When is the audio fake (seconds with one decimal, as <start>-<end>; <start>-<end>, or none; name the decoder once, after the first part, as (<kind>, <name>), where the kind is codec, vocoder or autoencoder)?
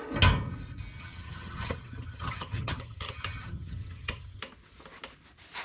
1.0-4.4 (vocoder, HiFi-GAN)